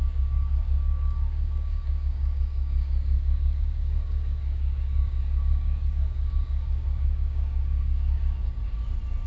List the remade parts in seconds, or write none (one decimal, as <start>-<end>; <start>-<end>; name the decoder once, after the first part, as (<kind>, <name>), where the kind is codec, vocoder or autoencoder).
0.0-8.6 (codec, DAC)